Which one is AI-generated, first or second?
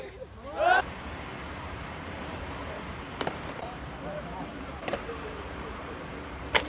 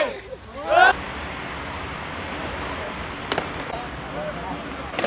first